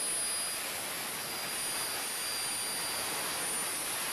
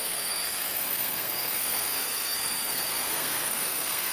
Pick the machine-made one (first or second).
second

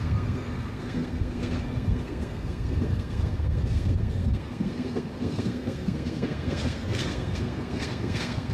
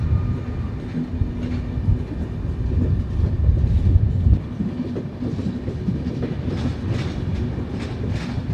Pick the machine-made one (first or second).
first